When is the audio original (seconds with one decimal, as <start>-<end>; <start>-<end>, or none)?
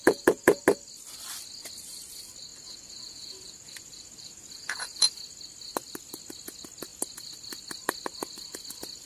0.6-2.5; 5.1-9.1